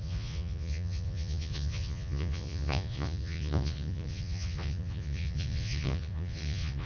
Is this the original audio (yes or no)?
no